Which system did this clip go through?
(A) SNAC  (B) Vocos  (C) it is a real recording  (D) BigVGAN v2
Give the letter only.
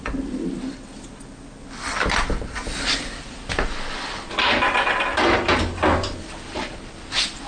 C